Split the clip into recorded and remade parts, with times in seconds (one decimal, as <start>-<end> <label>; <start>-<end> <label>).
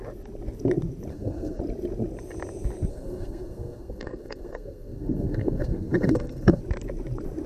0.0-1.1 recorded; 1.1-1.6 remade; 1.6-2.9 recorded; 2.9-6.6 remade; 6.6-7.5 recorded